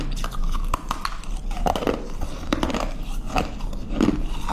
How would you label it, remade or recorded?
recorded